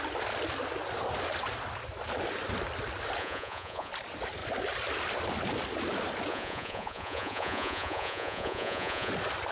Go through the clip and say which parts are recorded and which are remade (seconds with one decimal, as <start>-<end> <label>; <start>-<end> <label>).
0.0-3.2 recorded; 3.2-3.9 remade; 3.9-6.3 recorded; 6.3-9.1 remade; 9.1-9.5 recorded